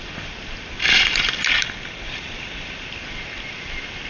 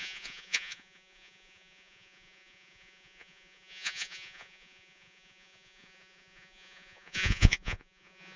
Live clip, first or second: first